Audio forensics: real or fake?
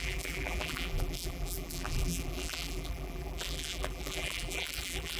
fake